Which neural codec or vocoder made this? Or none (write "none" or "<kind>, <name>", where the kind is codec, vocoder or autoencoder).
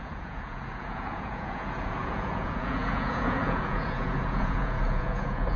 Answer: vocoder, Vocos